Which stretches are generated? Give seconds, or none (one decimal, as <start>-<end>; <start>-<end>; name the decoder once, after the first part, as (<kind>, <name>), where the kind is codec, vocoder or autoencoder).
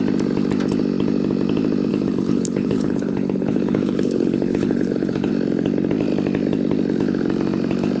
1.9-5.3 (codec, HILCodec)